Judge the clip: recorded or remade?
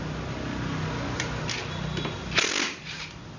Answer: recorded